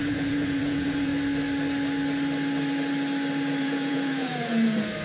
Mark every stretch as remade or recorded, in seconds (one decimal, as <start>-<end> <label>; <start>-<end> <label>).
0.0-1.1 remade; 1.1-3.6 recorded; 3.6-5.0 remade